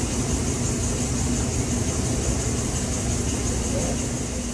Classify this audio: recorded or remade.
recorded